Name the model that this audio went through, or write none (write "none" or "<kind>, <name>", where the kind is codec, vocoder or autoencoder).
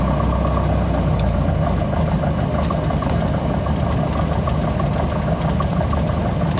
none